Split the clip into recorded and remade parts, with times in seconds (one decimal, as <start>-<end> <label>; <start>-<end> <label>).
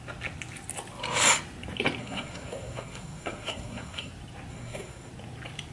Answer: 0.0-2.0 recorded; 2.0-4.1 remade; 4.1-4.5 recorded; 4.5-5.1 remade; 5.1-5.7 recorded